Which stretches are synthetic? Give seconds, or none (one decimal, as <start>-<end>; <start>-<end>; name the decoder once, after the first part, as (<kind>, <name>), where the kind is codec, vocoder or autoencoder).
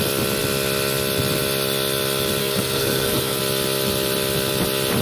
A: 2.4-3.4 (codec, SNAC)